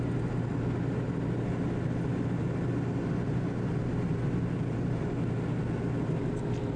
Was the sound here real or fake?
real